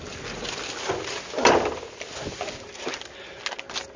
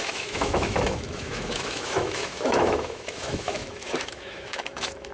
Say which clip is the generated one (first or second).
second